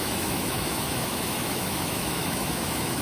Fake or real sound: fake